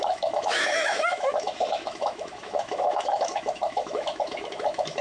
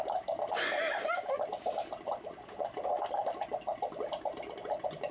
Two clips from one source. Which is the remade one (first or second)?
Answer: first